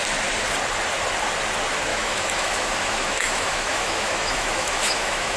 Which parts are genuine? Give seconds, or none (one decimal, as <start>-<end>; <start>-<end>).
0.0-1.9